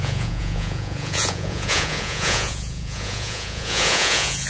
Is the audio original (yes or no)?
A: no